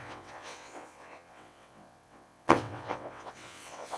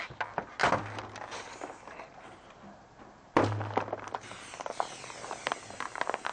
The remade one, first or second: first